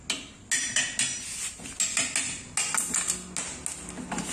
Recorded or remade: recorded